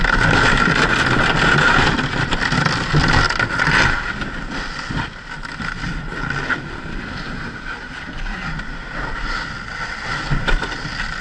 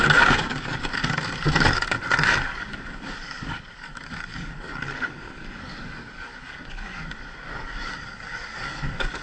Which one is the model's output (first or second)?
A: second